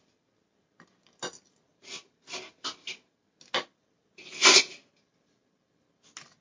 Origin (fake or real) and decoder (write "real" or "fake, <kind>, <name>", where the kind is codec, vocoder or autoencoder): real